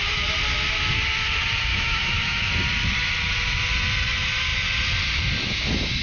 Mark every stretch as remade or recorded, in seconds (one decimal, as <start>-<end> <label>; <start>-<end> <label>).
0.0-1.7 recorded; 1.7-2.5 remade; 2.5-6.0 recorded